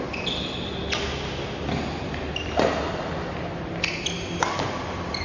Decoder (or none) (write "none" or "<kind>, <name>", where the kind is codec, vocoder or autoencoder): none